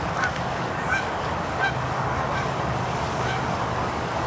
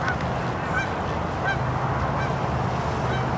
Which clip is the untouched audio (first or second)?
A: second